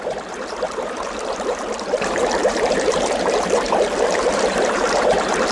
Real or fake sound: fake